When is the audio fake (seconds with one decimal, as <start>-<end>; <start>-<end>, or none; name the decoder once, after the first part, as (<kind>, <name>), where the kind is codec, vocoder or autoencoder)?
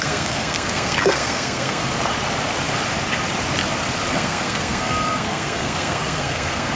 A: 0.0-1.8 (codec, SNAC); 4.1-6.8